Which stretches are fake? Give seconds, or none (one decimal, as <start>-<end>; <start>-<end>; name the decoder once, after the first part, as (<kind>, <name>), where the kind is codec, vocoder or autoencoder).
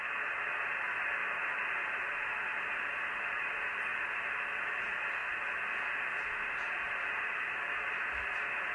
0.0-1.2 (vocoder, BigVGAN v2); 3.1-3.9; 4.8-5.2; 6.1-8.7